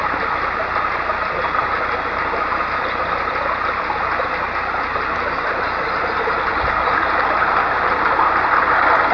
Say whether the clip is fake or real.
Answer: real